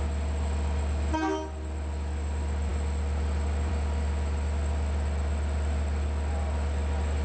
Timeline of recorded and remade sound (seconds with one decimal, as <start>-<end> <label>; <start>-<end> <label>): 0.0-7.2 recorded

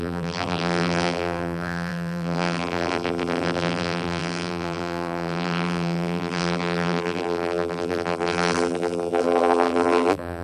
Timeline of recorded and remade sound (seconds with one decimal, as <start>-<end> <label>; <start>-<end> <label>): 0.0-10.4 remade

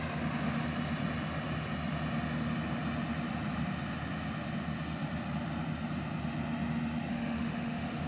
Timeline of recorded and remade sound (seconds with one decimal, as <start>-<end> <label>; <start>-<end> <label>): 0.0-7.1 recorded; 7.1-8.1 remade

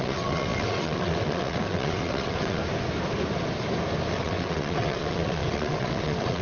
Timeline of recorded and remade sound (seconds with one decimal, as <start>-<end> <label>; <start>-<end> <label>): 0.0-2.6 remade; 2.6-4.1 recorded; 4.1-6.4 remade

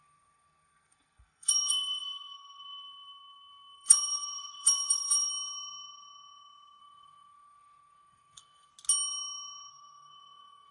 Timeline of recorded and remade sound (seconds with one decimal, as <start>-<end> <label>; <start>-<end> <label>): 0.0-5.3 remade; 5.3-6.8 recorded; 6.8-8.7 remade; 8.7-9.7 recorded; 9.7-10.7 remade

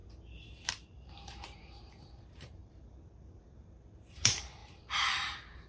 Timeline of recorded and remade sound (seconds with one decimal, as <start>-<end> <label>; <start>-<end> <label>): 0.0-0.7 recorded; 0.7-5.7 remade

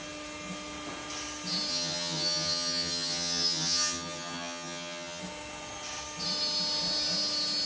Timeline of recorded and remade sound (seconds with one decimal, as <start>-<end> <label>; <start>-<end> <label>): 0.0-1.7 recorded; 1.7-5.2 remade; 5.2-7.7 recorded